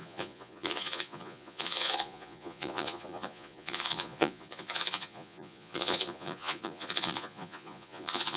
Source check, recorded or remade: remade